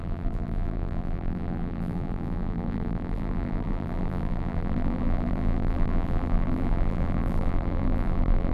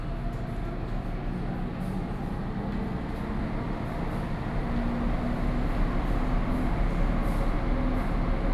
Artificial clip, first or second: first